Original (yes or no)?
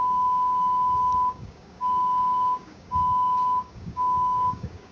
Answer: no